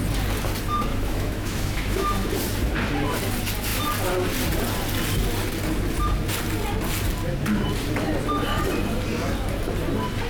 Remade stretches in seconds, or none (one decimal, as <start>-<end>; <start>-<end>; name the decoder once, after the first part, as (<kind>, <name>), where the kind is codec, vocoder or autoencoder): 0.9-2.3 (autoencoder, DAC-VAE)